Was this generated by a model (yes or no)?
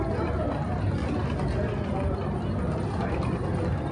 no